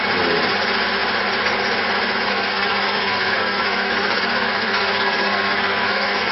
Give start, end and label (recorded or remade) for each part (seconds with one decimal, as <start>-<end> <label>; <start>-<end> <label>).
0.0-2.3 recorded; 2.3-6.3 remade